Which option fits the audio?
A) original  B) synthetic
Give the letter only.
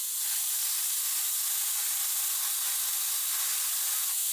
A